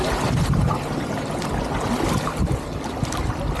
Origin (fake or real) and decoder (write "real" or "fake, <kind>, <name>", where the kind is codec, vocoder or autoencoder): real